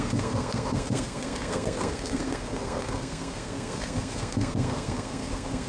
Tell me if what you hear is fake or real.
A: fake